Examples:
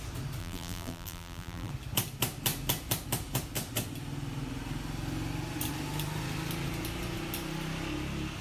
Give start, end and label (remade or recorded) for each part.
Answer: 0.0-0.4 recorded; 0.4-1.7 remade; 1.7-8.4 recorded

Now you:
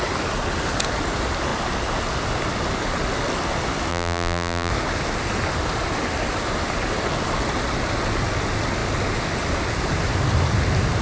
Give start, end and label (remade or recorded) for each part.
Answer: 0.0-3.9 recorded; 3.9-4.7 remade; 4.7-11.0 recorded

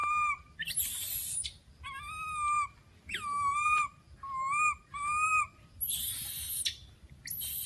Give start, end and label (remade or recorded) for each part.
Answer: 0.0-7.7 recorded